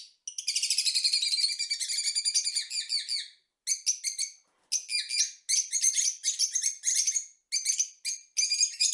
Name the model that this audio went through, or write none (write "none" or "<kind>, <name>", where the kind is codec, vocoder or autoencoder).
none